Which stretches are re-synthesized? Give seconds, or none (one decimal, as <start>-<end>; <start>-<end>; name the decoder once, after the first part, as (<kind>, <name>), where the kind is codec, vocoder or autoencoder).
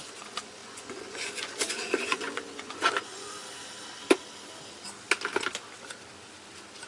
0.0-3.4 (vocoder, Vocos)